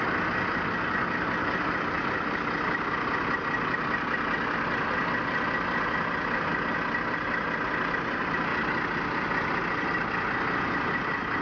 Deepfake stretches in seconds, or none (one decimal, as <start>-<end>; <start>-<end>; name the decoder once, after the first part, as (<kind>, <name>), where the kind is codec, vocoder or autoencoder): none